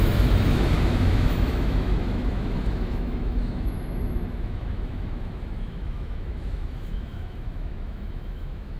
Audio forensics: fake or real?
fake